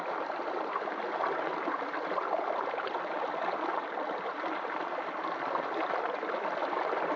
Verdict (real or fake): real